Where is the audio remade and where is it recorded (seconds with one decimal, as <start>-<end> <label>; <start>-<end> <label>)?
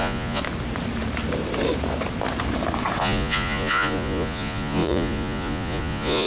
0.0-0.4 remade; 0.4-3.0 recorded; 3.0-6.3 remade